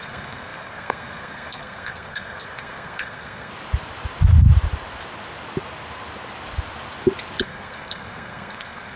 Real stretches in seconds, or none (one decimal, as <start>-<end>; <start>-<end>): 3.5-7.4